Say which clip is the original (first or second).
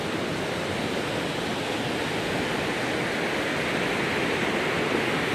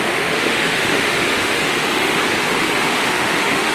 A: first